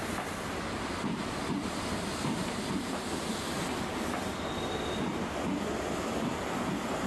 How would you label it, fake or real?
real